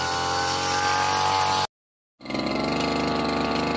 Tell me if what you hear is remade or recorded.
recorded